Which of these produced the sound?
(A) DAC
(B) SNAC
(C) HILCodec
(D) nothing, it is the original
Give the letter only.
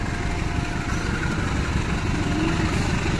D